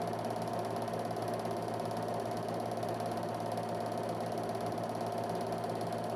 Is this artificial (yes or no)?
no